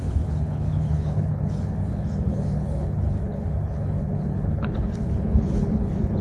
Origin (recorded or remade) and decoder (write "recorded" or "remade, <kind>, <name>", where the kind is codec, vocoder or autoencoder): remade, codec, HILCodec